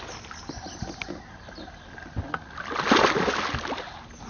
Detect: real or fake real